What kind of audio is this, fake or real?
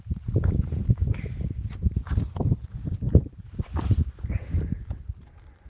fake